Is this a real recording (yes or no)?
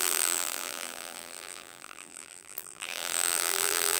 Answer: no